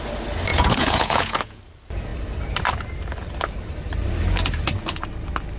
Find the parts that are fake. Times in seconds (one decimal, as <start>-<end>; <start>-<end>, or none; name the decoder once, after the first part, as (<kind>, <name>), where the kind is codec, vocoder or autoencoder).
0.5-1.6 (vocoder, Vocos)